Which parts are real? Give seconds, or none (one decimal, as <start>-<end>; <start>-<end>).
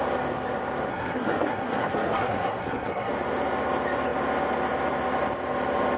0.0-0.9; 3.1-6.0